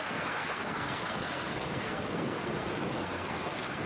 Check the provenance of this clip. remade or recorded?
remade